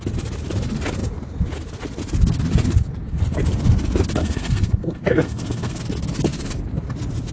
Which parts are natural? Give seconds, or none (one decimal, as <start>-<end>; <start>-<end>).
0.0-4.2; 5.8-7.3